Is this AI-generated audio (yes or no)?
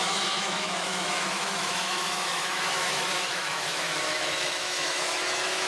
yes